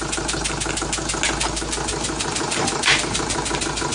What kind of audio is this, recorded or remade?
recorded